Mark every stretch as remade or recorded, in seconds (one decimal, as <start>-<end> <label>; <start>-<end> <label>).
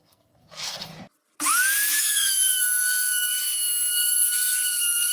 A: 0.0-0.9 remade; 0.9-2.0 recorded; 2.0-3.4 remade; 3.4-3.9 recorded; 3.9-5.1 remade